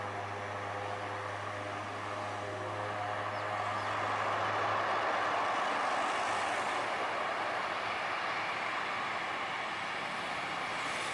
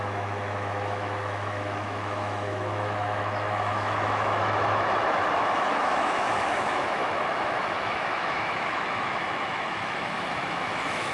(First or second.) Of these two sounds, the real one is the first